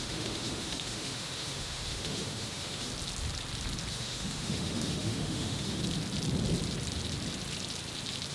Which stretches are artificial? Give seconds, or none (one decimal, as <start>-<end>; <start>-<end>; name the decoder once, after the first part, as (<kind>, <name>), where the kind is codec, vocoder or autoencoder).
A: 0.0-2.9 (autoencoder, DAC-VAE); 3.9-5.8